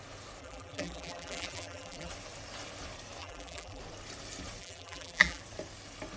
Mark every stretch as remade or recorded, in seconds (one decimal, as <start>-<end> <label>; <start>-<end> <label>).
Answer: 0.0-0.4 recorded; 0.4-2.1 remade; 2.1-3.2 recorded; 3.2-3.8 remade; 3.8-4.6 recorded; 4.6-5.4 remade; 5.4-6.2 recorded